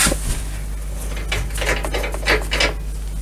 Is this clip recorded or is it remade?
recorded